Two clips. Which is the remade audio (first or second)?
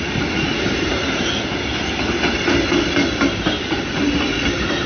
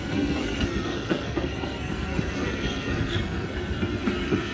second